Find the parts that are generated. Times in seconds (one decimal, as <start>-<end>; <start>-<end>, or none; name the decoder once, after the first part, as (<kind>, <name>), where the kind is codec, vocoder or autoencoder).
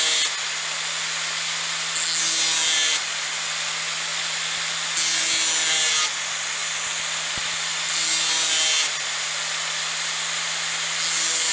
none